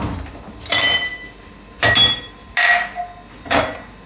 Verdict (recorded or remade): recorded